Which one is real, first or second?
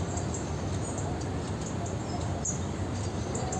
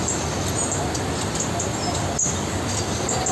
second